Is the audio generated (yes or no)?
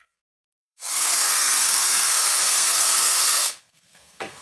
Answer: yes